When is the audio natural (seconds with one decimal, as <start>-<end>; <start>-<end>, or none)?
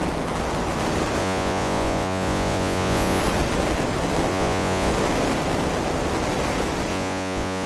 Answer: 0.0-1.2; 3.2-4.3; 4.9-6.9